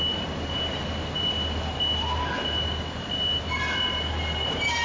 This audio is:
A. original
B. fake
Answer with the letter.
A